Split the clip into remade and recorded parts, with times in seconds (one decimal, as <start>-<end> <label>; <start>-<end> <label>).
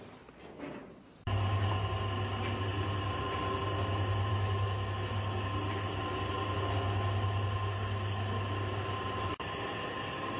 0.0-4.3 recorded; 4.3-5.1 remade; 5.1-10.4 recorded